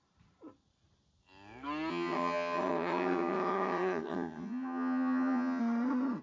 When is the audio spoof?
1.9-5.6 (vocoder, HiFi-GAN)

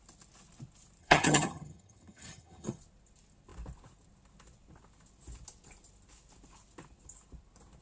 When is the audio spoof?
1.0-2.8 (vocoder, HiFi-GAN)

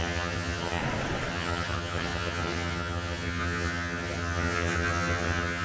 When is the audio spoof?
0.0-0.8 (vocoder, HiFi-GAN); 1.3-5.6

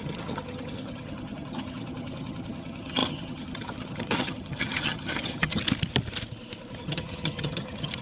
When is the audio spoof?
0.0-5.6 (vocoder, HiFi-GAN); 6.7-8.0

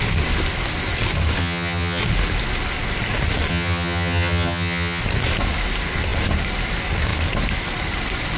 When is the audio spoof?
1.4-2.0 (vocoder, HiFi-GAN); 3.5-5.0